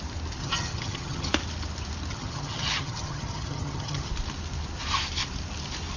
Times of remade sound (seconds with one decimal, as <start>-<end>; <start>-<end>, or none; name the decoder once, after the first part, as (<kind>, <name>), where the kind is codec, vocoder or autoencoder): 0.4-1.3 (vocoder, HiFi-GAN); 2.1-4.1